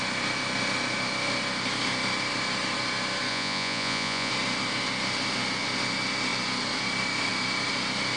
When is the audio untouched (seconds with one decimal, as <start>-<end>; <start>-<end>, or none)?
0.0-3.3; 4.3-8.2